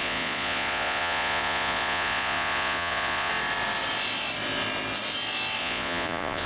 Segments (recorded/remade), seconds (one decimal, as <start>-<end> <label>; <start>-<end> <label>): 0.0-3.3 remade; 3.3-5.6 recorded; 5.6-6.5 remade